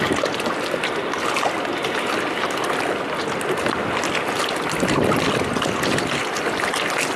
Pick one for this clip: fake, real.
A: real